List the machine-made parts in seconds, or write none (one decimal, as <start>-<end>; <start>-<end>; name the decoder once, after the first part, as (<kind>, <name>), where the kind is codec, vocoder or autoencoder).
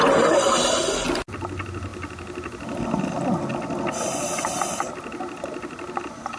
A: none